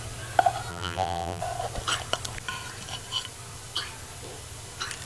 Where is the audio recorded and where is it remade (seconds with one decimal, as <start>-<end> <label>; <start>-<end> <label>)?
0.0-0.7 recorded; 0.7-1.4 remade; 1.4-5.1 recorded